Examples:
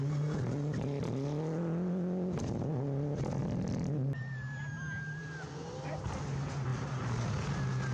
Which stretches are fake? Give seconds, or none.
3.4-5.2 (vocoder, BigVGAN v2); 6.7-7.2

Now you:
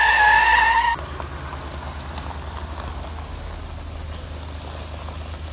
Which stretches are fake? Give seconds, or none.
none

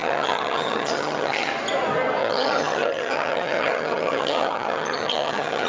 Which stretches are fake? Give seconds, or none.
0.0-1.5 (vocoder, HiFi-GAN); 2.2-5.7

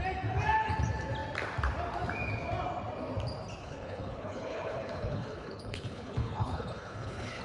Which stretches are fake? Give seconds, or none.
3.6-7.4 (codec, HILCodec)

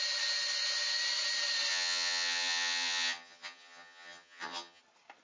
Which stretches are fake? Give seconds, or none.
1.7-4.8 (vocoder, HiFi-GAN)

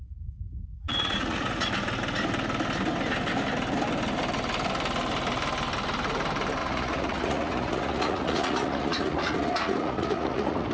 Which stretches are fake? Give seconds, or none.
0.7-1.7 (vocoder, Vocos); 6.6-10.7